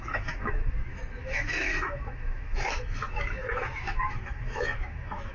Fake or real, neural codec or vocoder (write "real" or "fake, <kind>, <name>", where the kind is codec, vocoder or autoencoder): fake, autoencoder, DAC-VAE